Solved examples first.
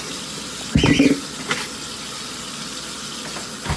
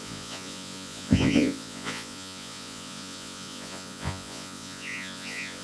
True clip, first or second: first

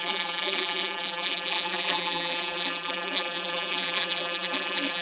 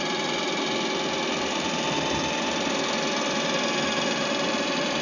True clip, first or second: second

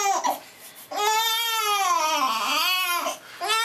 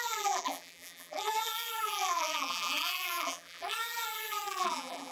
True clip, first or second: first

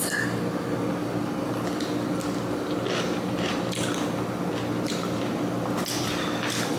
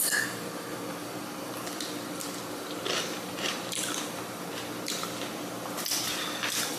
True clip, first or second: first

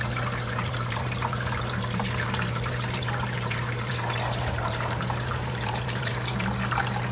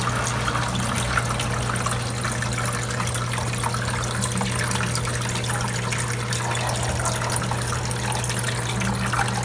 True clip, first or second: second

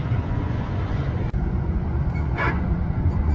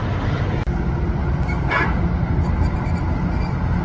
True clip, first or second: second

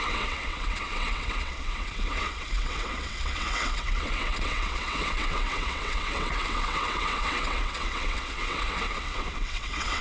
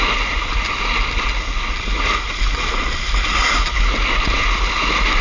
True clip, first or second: second